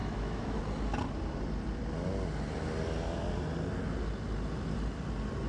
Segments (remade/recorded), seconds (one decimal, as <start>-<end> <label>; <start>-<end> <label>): 0.0-0.6 remade; 0.6-5.5 recorded